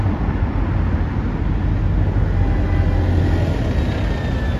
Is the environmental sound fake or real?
real